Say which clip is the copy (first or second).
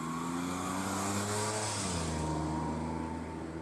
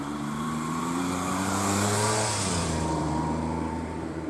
second